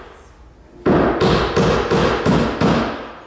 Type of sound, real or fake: real